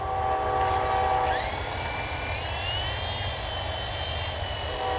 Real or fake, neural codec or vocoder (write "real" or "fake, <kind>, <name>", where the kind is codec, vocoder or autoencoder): real